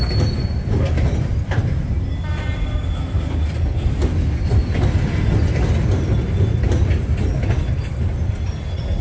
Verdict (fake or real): real